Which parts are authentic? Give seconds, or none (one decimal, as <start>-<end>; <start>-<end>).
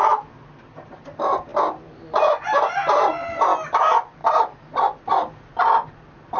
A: 0.0-6.4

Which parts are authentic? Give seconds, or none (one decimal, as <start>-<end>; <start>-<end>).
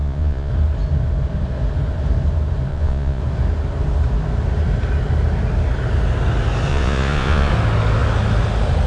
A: 0.5-2.7; 3.2-6.7; 7.5-8.9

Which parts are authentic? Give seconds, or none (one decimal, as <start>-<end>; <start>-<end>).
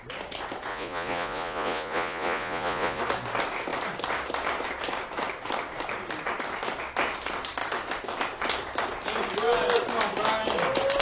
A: 0.0-0.7; 3.0-11.0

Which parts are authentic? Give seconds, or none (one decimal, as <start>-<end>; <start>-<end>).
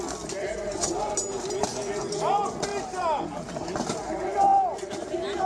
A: 0.0-0.4; 0.9-5.5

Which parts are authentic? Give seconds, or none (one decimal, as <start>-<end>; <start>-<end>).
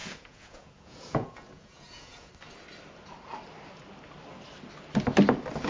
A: 2.3-5.7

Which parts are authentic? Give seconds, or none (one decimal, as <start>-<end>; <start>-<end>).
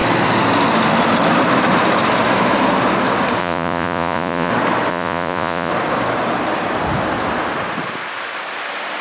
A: 0.0-3.4; 4.5-4.9; 5.7-9.0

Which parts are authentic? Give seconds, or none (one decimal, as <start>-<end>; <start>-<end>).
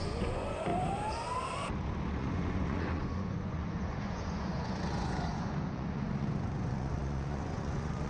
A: 0.7-2.2